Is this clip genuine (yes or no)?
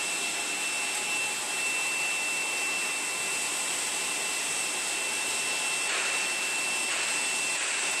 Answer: yes